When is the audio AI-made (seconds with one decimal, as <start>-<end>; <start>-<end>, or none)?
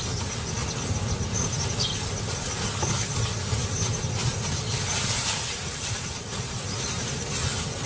4.2-7.2